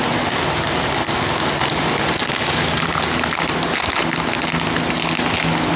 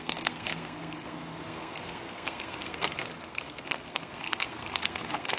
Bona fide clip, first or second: first